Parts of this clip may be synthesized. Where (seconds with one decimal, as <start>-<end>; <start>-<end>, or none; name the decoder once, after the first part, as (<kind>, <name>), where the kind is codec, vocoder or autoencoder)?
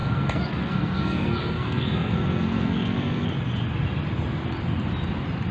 0.0-3.3 (codec, SNAC)